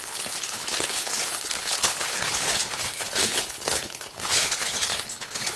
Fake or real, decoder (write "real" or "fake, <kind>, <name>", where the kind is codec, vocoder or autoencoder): fake, codec, HILCodec